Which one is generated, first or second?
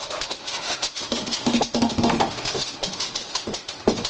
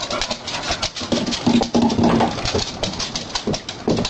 first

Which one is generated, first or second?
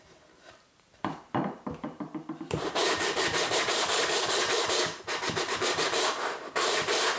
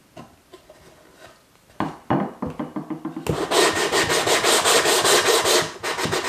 first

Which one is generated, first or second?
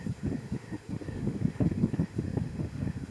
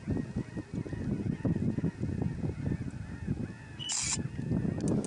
first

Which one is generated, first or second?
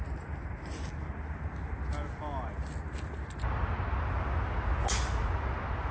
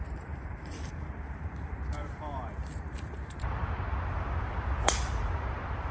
second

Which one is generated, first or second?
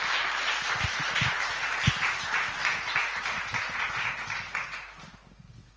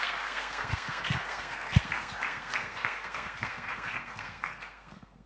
second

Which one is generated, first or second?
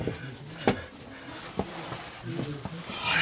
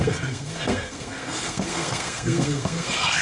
second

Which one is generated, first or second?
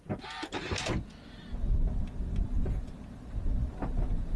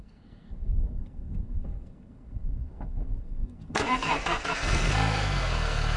second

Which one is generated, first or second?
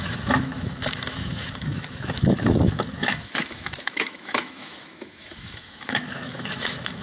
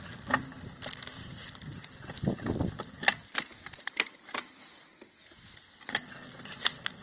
first